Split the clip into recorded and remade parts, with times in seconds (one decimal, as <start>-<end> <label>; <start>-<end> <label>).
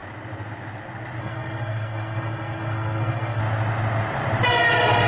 0.0-1.2 recorded; 1.2-3.4 remade; 3.4-5.1 recorded